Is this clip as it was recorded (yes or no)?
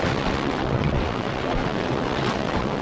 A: no